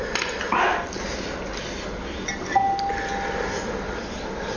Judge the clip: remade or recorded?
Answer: recorded